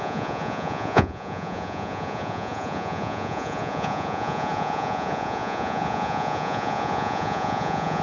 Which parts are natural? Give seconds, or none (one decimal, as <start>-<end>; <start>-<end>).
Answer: none